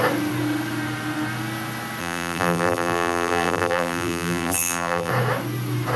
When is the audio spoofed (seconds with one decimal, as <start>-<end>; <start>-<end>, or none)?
2.0-5.1